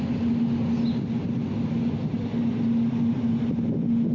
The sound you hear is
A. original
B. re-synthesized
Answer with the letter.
A